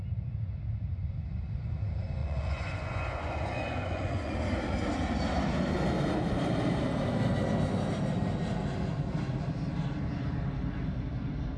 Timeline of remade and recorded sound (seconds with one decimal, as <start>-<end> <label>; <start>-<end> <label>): 0.0-2.2 recorded; 2.2-4.3 remade; 4.3-11.6 recorded